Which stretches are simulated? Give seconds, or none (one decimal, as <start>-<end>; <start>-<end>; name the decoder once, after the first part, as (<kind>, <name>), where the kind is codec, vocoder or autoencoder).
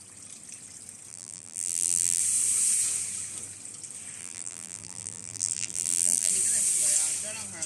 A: 1.1-2.2 (vocoder, BigVGAN v2); 4.2-6.3